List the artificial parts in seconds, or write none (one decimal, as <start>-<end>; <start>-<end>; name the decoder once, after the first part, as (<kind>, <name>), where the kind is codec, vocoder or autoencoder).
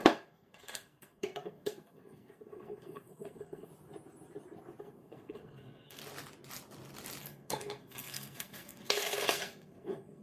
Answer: 0.0-3.7 (codec, SNAC); 4.8-6.0; 7.2-10.2